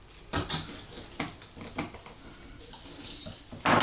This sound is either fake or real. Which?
real